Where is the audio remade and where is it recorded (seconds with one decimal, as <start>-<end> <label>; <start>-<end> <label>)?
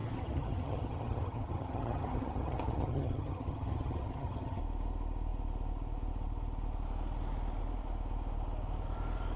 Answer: 0.0-4.6 remade; 4.6-9.4 recorded